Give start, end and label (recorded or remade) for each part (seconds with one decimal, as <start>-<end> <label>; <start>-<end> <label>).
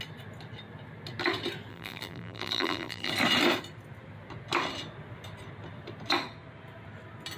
0.0-1.7 recorded; 1.7-3.1 remade; 3.1-7.4 recorded